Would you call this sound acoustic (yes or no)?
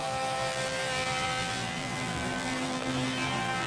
no